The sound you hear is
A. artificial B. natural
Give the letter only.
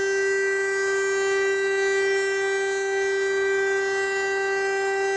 B